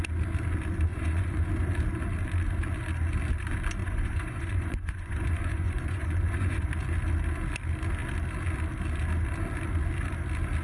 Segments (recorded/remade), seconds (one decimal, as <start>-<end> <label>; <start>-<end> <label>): 0.0-0.9 recorded; 0.9-1.5 remade; 1.5-3.8 recorded; 3.8-6.7 remade; 6.7-10.6 recorded